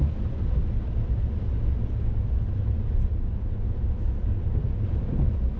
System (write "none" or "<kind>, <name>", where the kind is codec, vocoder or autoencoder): none